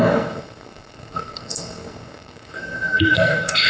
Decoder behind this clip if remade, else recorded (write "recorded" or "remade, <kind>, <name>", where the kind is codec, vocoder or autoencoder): remade, codec, SNAC